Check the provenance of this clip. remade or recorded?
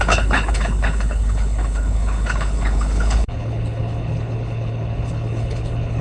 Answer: remade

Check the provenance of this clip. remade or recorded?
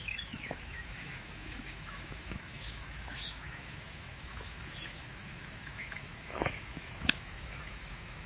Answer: remade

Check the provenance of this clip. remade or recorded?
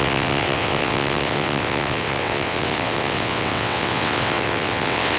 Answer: remade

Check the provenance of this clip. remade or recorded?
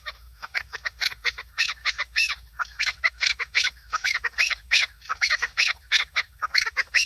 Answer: remade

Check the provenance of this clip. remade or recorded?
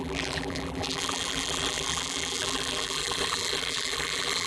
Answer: remade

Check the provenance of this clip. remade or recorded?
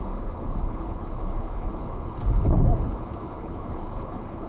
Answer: remade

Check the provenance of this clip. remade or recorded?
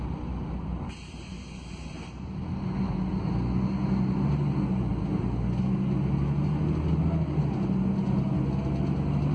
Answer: recorded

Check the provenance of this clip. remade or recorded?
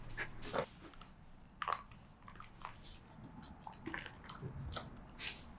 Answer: recorded